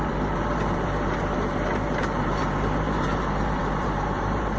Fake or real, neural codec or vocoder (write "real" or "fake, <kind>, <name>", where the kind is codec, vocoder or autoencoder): fake, vocoder, BigVGAN v2